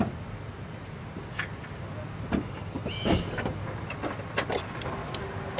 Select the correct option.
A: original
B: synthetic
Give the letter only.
A